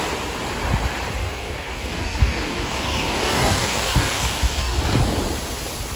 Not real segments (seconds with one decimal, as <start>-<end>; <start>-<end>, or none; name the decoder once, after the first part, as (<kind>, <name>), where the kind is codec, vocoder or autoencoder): 1.2-4.8 (codec, DAC)